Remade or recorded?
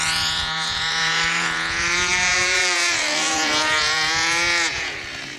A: remade